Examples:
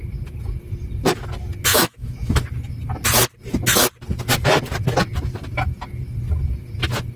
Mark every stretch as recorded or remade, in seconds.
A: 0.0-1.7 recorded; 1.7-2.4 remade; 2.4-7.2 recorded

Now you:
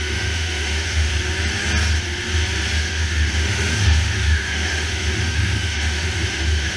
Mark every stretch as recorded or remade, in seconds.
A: 0.0-1.1 remade; 1.1-2.8 recorded; 2.8-6.8 remade

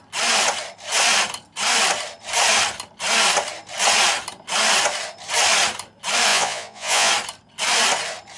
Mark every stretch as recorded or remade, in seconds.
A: 0.0-6.3 recorded; 6.3-7.1 remade; 7.1-8.4 recorded

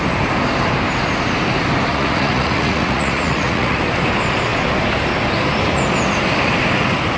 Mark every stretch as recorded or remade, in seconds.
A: 0.0-1.9 recorded; 1.9-3.8 remade; 3.8-7.2 recorded